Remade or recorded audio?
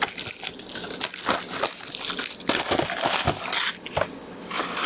recorded